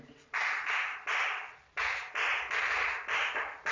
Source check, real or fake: fake